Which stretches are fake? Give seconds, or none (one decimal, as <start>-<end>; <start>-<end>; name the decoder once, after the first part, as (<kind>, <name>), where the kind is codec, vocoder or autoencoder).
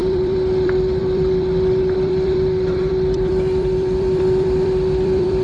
0.0-5.4 (vocoder, BigVGAN v2)